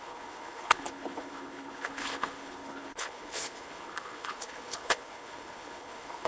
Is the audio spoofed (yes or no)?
yes